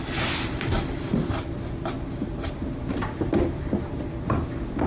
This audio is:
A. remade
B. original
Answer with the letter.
B